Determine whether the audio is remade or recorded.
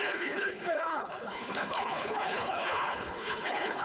remade